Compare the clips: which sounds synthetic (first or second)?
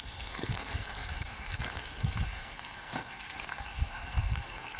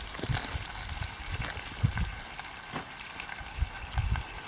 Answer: first